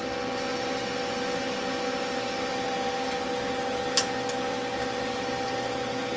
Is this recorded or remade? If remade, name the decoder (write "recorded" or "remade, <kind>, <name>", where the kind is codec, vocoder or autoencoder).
recorded